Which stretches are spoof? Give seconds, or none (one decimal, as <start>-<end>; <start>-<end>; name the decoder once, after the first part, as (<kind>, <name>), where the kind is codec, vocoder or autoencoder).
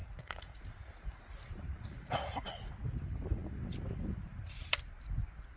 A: 0.0-0.6 (vocoder, Vocos); 1.9-2.6